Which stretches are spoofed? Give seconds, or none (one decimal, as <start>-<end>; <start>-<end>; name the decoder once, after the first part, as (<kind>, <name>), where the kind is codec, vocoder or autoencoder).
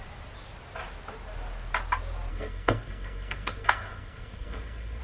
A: 2.3-5.0 (codec, SNAC)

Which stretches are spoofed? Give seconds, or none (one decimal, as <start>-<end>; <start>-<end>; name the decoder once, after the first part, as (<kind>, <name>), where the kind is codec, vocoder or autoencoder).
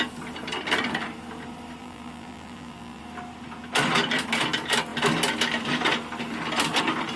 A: 1.8-3.0 (vocoder, BigVGAN v2)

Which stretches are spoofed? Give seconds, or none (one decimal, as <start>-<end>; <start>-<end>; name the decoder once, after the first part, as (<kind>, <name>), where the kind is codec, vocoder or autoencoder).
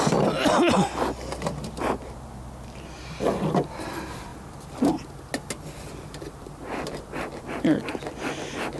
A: none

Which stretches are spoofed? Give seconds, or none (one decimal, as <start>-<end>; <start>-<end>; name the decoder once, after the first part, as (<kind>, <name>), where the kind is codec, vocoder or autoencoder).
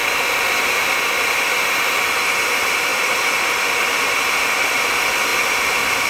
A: 0.0-0.7 (vocoder, BigVGAN v2); 2.9-4.7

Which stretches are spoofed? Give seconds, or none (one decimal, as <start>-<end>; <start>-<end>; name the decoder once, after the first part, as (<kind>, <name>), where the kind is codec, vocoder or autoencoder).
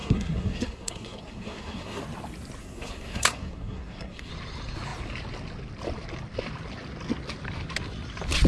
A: 0.0-2.0 (codec, SNAC); 2.6-4.3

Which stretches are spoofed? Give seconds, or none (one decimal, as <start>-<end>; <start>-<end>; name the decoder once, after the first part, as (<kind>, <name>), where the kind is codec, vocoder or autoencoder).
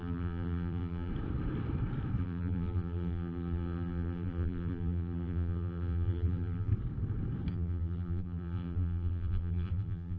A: 0.0-1.1 (vocoder, BigVGAN v2); 2.2-6.7; 7.5-10.2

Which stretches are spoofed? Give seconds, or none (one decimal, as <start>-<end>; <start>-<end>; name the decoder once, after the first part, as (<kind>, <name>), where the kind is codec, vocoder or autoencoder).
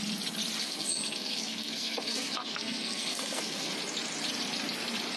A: 0.6-3.7 (codec, SNAC)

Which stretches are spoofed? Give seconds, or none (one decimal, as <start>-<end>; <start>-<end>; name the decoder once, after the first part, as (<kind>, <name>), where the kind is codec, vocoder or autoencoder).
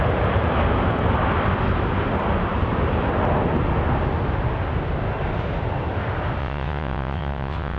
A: 6.4-7.8 (vocoder, WaveNeXt)